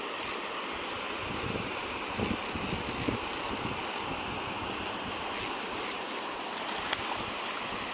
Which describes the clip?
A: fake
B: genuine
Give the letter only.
B